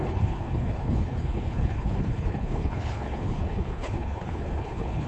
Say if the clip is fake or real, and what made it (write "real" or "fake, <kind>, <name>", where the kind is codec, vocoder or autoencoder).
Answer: fake, codec, HILCodec